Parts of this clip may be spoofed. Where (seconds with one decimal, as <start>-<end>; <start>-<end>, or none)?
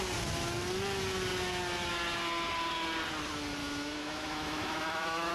3.6-5.3